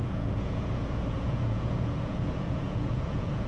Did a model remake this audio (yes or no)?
yes